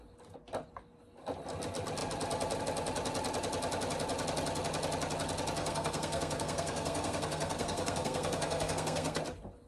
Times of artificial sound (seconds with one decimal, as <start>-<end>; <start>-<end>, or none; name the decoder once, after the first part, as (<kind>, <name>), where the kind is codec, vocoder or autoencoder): 5.6-9.2 (codec, SNAC)